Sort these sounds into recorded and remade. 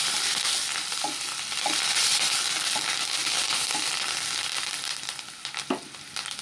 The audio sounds recorded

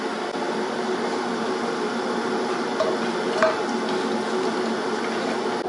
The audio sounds recorded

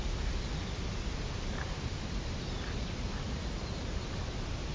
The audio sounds recorded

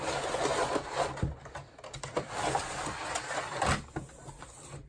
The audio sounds recorded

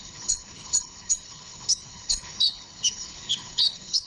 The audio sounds remade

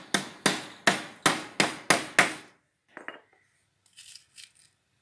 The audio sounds recorded